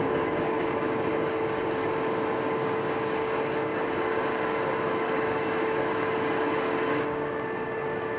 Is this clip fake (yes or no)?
yes